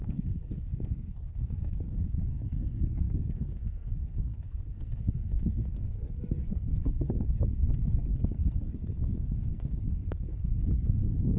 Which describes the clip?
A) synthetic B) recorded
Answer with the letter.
A